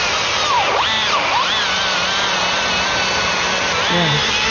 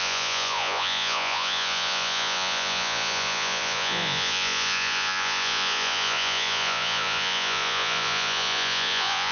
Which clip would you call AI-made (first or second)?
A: second